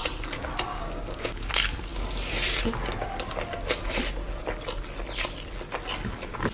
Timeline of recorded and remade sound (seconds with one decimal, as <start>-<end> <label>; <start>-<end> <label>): 0.0-0.7 recorded; 0.7-1.5 remade; 1.5-6.5 recorded